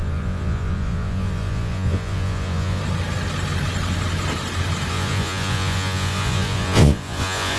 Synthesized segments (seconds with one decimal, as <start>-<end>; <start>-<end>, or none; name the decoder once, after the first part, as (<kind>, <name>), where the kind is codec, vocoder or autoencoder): 0.0-2.8 (vocoder, Vocos); 4.9-7.6